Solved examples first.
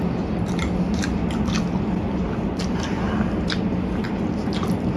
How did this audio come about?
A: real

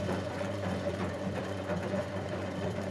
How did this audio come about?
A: fake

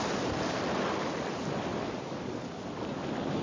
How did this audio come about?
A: real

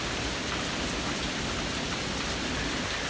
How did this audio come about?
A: real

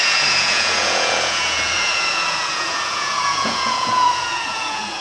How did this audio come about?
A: fake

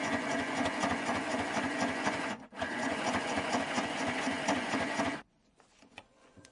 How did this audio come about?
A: fake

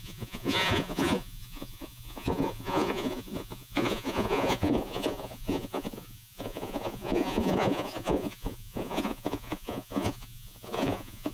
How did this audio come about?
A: fake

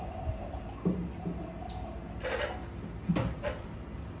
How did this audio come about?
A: real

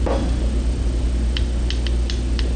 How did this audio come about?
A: real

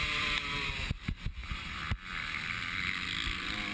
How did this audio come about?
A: real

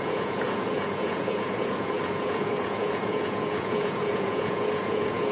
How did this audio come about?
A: fake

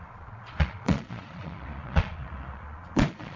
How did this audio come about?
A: fake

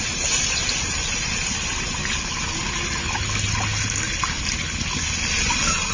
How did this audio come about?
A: real